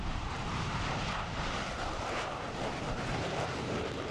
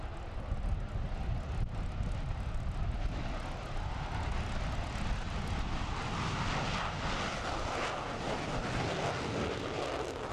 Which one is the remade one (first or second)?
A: first